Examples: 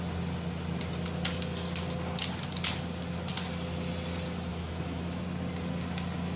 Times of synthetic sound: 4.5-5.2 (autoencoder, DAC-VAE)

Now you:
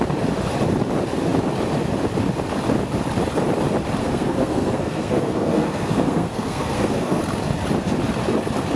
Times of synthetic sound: 4.0-7.2 (codec, SNAC)

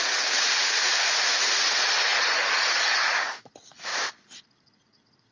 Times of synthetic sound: 0.0-3.9 (vocoder, Vocos); 4.6-5.3